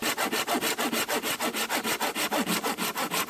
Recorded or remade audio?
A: recorded